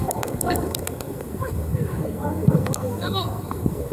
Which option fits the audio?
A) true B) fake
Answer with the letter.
B